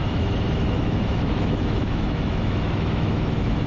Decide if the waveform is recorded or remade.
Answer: remade